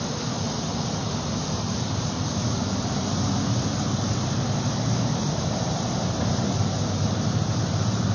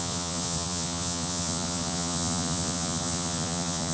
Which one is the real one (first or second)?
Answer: first